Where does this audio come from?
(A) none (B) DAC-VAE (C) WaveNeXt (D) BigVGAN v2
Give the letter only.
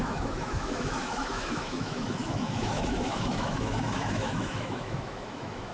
B